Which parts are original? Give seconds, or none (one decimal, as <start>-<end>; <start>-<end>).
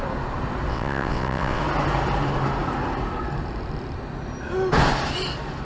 0.0-0.7; 1.6-5.6